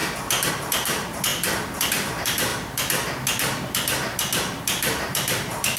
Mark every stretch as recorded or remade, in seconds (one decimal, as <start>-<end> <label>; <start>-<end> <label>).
0.0-0.5 recorded; 0.5-2.5 remade; 2.5-4.6 recorded; 4.6-5.8 remade